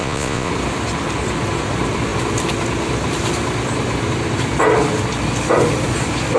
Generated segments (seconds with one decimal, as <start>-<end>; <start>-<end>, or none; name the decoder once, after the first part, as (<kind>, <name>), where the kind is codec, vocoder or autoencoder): 0.0-0.5 (vocoder, Vocos)

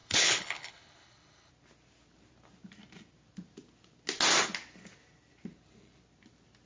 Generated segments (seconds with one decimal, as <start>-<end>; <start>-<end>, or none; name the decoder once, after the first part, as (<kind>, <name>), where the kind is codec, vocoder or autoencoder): 0.0-1.5 (codec, HILCodec)